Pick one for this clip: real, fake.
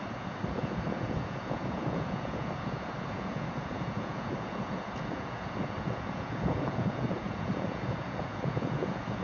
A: fake